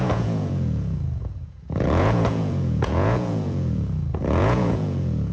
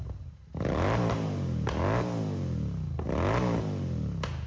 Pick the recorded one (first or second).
second